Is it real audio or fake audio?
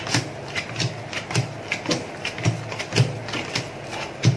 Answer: real